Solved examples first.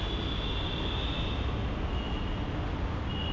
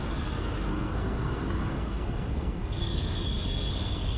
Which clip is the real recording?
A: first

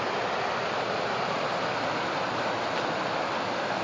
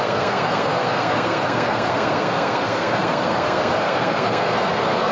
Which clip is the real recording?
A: first